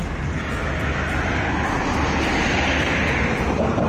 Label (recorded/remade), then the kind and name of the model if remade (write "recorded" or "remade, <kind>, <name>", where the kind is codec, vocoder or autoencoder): recorded